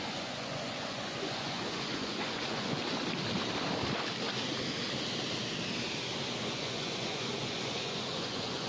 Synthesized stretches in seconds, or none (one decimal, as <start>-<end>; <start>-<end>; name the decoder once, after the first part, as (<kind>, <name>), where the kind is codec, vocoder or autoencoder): 0.0-2.8 (vocoder, Vocos); 6.4-8.7